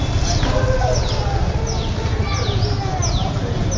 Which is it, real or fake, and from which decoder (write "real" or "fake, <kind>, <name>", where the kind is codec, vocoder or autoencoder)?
real